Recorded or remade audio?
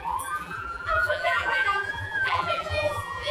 remade